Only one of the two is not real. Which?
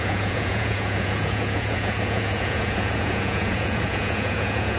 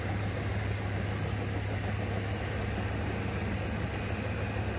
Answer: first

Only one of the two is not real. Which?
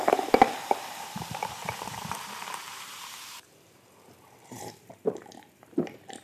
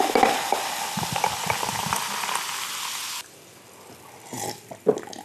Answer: first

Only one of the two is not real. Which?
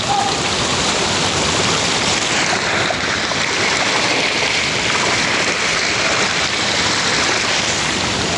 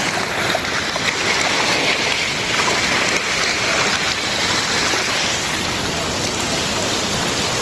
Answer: first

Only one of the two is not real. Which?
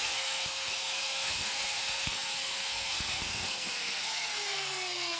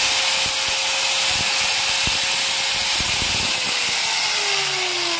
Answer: first